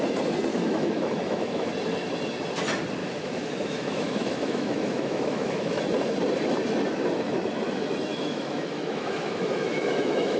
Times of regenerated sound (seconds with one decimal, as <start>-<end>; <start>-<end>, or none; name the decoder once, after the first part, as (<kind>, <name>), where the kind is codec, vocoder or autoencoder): 0.5-1.7 (autoencoder, DAC-VAE); 3.0-5.8; 8.1-10.4